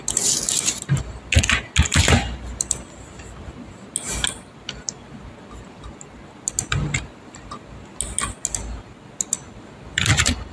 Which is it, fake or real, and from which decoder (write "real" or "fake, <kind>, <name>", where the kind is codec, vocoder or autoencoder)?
real